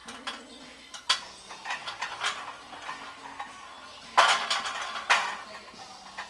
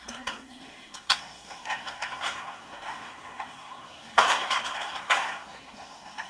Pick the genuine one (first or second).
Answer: first